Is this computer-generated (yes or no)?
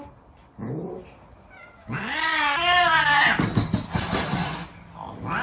no